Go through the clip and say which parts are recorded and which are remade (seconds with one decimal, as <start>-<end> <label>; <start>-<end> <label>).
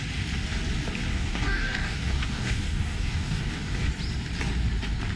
0.0-1.1 recorded; 1.1-3.9 remade; 3.9-5.2 recorded